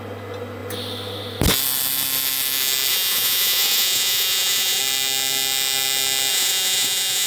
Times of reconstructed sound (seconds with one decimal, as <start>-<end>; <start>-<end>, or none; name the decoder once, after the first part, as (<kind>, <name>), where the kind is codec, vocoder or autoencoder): 2.9-4.8 (vocoder, Vocos); 6.3-7.3